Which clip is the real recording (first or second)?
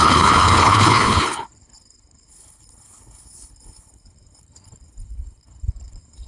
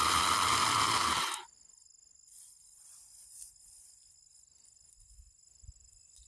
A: second